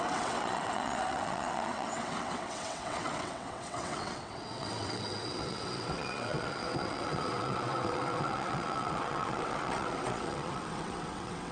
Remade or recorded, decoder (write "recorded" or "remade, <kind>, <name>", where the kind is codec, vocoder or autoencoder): remade, vocoder, WaveNeXt